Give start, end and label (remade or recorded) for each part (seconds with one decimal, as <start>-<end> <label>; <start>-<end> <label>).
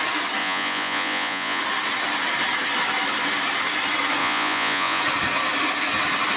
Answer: 0.0-0.4 recorded; 0.4-1.6 remade; 1.6-4.2 recorded; 4.2-5.0 remade; 5.0-6.4 recorded